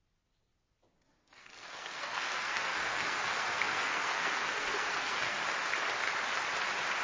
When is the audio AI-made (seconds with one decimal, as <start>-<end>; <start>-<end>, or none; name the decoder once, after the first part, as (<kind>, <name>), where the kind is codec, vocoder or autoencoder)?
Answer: 1.2-5.4 (codec, SNAC)